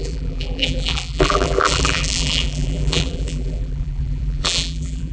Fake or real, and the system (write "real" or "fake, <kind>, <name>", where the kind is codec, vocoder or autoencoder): fake, vocoder, BigVGAN v2